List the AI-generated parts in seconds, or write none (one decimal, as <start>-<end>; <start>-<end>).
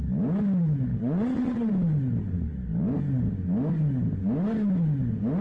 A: 0.9-1.7